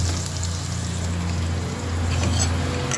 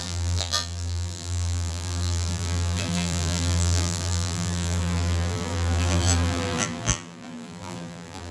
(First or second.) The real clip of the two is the first